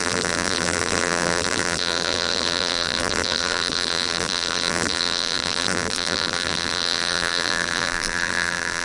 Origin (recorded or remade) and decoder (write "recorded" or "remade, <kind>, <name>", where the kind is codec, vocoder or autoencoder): remade, vocoder, BigVGAN v2